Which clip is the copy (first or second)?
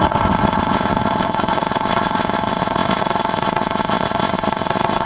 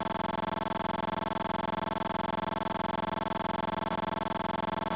first